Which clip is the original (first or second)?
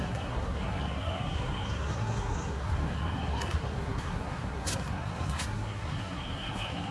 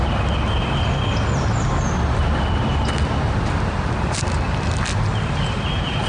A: second